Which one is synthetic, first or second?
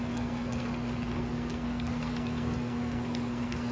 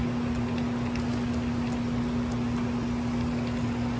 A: first